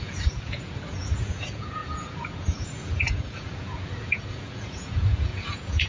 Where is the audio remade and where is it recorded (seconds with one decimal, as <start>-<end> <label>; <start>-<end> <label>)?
0.0-5.9 remade